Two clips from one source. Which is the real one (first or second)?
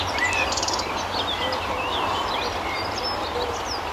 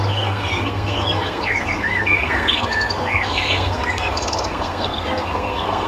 first